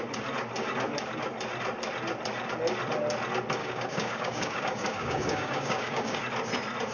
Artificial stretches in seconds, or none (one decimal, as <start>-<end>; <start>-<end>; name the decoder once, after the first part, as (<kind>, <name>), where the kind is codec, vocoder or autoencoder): 3.6-6.2 (codec, DAC)